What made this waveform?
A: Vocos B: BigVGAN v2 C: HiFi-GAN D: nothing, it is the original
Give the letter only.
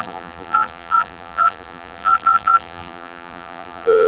B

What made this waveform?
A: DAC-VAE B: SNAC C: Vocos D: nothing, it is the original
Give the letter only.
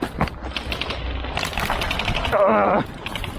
D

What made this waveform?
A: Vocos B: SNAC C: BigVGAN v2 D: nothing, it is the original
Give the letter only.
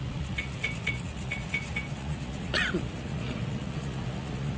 A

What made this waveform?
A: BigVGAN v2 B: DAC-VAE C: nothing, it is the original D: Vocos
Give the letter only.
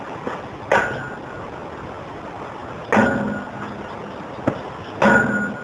C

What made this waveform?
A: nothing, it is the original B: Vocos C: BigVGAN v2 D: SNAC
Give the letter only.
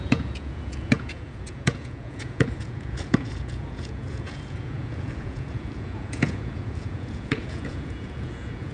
B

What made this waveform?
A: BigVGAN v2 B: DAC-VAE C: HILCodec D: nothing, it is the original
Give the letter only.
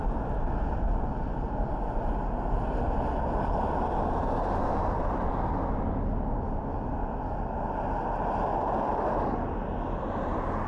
D